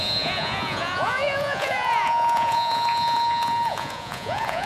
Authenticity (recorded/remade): remade